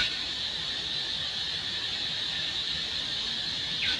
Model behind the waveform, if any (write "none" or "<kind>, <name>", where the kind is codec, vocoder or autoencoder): none